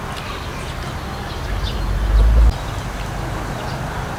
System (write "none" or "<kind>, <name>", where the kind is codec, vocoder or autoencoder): none